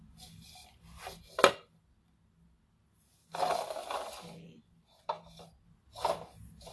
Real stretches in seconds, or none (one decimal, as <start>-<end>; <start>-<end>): 0.0-6.7